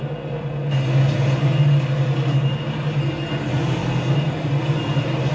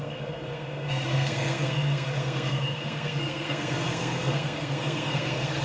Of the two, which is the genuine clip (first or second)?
first